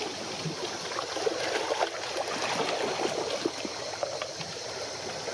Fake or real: real